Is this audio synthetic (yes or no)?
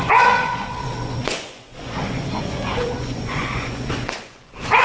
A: yes